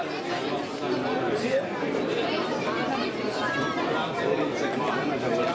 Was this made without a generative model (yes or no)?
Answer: yes